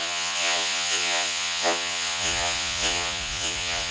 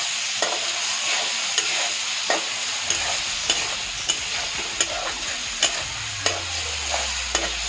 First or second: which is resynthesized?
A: first